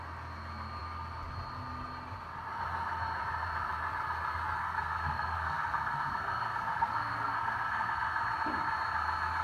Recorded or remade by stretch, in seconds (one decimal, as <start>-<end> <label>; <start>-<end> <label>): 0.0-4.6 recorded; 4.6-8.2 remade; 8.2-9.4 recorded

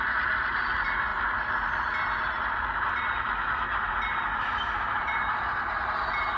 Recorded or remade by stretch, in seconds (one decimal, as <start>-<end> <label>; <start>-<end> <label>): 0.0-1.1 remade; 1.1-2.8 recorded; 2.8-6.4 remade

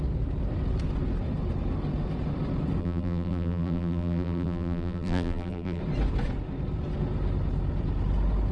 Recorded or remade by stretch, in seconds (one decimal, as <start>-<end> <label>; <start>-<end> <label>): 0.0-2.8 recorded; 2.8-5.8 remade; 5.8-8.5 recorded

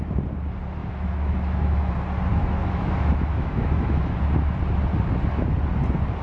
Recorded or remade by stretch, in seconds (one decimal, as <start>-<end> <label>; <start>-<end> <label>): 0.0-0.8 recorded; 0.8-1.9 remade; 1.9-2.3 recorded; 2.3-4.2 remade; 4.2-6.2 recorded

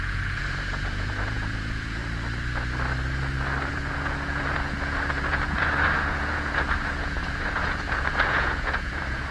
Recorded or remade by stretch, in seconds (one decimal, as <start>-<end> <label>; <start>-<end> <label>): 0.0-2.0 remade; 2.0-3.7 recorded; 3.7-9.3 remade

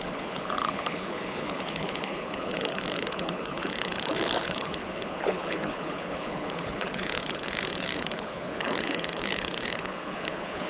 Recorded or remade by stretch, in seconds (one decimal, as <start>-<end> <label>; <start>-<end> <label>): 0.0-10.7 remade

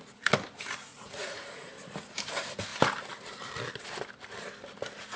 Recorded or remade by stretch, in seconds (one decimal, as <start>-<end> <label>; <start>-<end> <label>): 0.0-0.9 recorded; 0.9-1.7 remade; 1.7-5.2 recorded

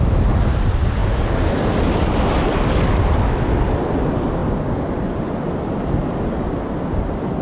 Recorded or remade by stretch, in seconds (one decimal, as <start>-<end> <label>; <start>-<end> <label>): 0.0-7.4 recorded